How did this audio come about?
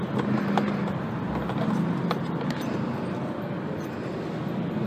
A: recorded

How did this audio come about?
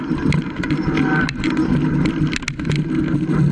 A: recorded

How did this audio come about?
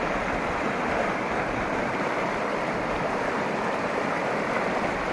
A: remade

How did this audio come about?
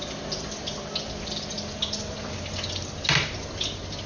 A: recorded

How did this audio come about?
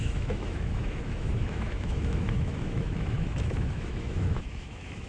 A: remade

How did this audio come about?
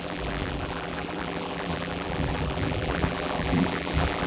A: remade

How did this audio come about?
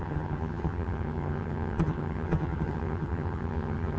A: remade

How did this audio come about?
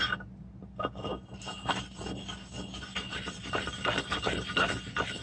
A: recorded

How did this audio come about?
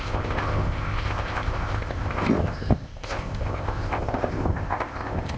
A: remade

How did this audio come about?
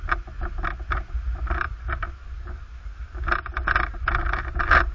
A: recorded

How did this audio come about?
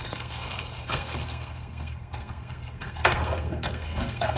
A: remade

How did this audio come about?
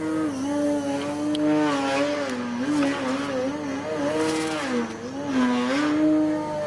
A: recorded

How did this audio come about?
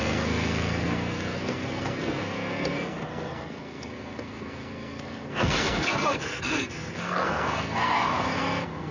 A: remade